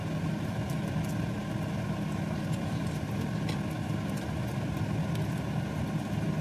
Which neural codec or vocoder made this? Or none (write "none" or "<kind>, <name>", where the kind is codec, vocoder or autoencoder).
none